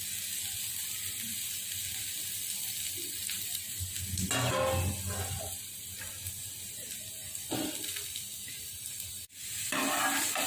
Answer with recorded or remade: recorded